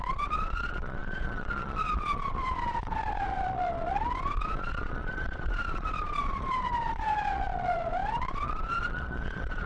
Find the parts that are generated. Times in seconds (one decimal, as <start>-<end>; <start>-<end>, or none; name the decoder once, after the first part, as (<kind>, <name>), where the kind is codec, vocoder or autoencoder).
0.0-9.7 (vocoder, Vocos)